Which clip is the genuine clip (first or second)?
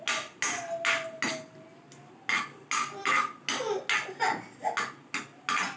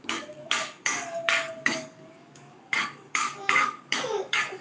first